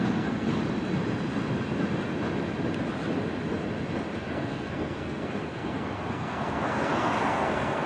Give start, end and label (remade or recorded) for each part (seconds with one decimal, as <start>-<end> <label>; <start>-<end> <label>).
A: 0.0-0.5 remade; 0.5-4.3 recorded; 4.3-7.9 remade